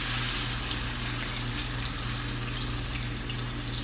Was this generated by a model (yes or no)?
no